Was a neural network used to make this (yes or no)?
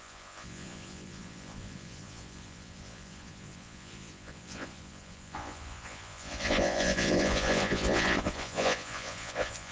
yes